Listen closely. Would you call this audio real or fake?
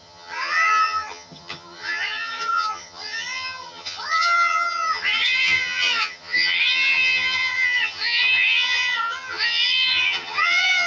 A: fake